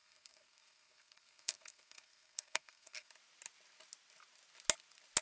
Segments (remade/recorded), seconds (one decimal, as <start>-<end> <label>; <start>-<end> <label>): 0.0-3.1 remade; 3.1-5.2 recorded